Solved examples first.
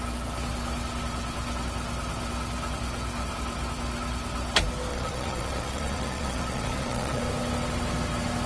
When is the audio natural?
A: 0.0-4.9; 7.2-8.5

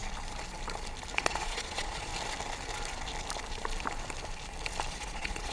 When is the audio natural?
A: 0.0-1.2; 2.1-4.9

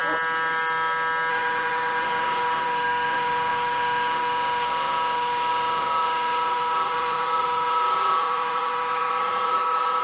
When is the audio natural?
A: 0.0-1.3

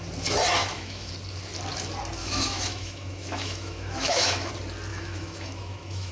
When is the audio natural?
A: 0.0-0.6; 1.1-2.2; 4.5-4.9